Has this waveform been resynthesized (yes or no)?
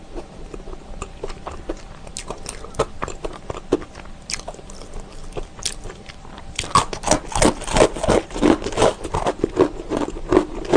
no